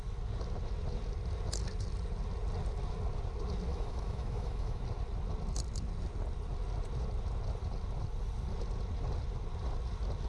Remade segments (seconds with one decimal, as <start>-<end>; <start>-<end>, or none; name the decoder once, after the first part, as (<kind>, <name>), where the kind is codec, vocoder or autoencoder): 3.7-4.8 (autoencoder, DAC-VAE)